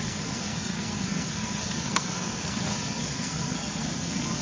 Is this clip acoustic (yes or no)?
no